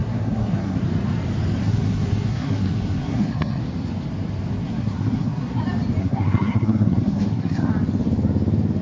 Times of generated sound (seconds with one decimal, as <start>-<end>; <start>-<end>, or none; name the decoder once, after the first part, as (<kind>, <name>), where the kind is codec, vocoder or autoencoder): 0.0-0.8 (codec, SNAC); 1.6-3.6; 4.5-5.6; 6.0-7.7